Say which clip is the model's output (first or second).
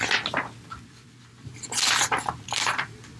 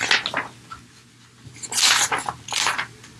first